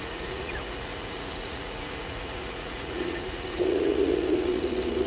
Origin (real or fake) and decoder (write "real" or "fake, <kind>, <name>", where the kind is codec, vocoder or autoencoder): fake, vocoder, Vocos